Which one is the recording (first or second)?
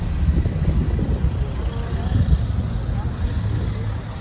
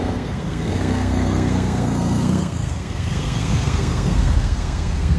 first